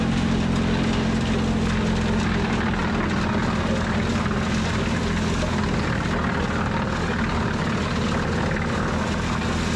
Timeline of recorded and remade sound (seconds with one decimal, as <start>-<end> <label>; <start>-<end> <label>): 0.0-9.8 recorded